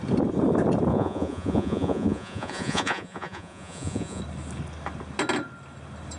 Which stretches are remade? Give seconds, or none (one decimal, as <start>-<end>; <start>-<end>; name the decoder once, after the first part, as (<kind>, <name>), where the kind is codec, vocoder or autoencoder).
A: 0.9-4.2 (vocoder, Vocos)